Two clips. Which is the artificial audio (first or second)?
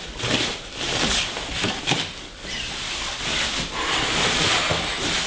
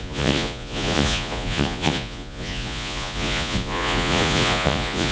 second